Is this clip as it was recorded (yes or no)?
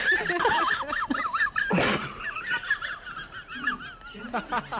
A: yes